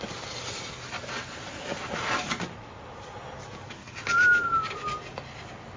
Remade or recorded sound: recorded